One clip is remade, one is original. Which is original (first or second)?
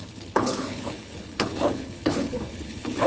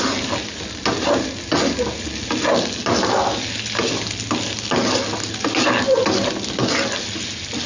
second